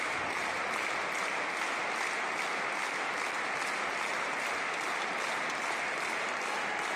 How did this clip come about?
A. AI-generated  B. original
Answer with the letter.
B